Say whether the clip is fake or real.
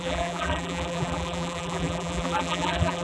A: fake